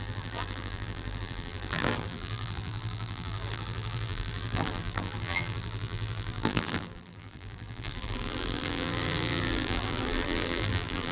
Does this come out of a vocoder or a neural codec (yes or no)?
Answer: yes